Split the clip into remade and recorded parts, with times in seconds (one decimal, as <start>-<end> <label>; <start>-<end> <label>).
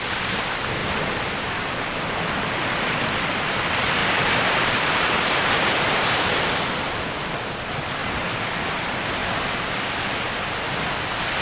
0.0-0.8 recorded; 0.8-2.6 remade; 2.6-4.0 recorded; 4.0-5.8 remade; 5.8-8.0 recorded; 8.0-8.7 remade; 8.7-9.2 recorded; 9.2-10.3 remade; 10.3-11.4 recorded